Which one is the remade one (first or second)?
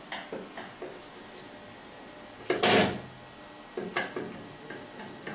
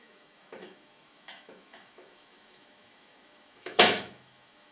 second